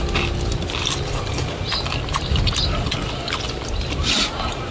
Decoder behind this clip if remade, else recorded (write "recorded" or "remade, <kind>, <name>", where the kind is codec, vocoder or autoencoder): recorded